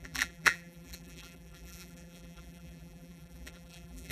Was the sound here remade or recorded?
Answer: remade